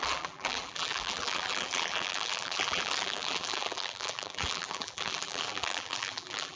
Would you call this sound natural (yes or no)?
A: no